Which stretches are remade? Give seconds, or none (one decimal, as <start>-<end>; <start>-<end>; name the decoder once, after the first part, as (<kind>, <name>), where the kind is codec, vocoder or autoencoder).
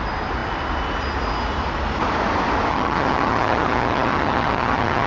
2.7-5.1 (vocoder, HiFi-GAN)